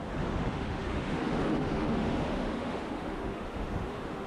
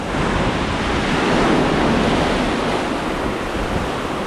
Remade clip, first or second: first